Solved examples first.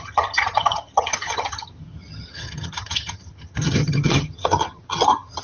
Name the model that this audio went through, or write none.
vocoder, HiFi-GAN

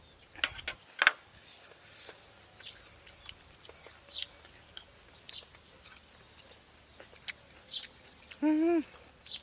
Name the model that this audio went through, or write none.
none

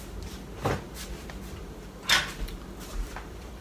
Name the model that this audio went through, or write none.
none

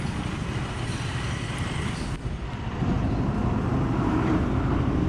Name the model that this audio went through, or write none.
none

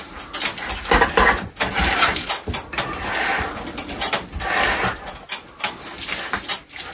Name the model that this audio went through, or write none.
none